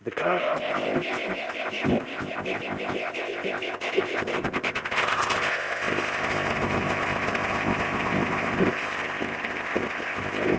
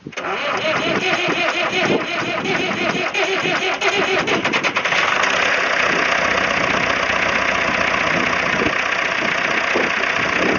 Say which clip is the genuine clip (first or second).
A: second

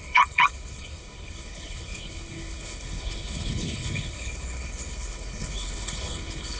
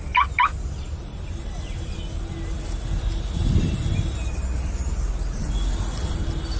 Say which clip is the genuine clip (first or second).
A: second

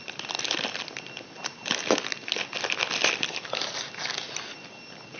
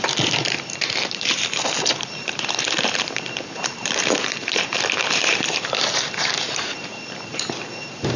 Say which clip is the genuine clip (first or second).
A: first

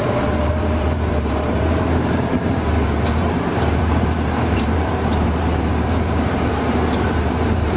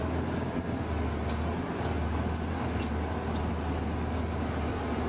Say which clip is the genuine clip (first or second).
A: second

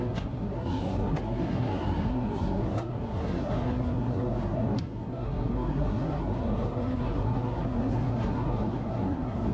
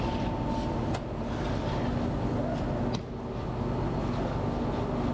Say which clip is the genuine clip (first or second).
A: second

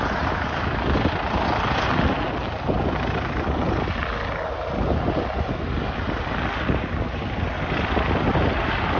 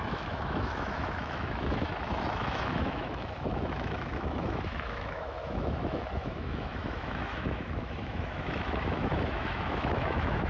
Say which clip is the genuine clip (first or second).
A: first